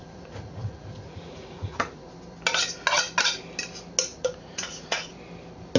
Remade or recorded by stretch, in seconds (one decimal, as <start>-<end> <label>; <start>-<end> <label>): 0.0-2.1 remade; 2.1-4.1 recorded; 4.1-5.1 remade; 5.1-5.8 recorded